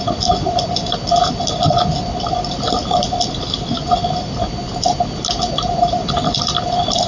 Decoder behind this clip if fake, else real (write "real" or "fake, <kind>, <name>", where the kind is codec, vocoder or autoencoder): real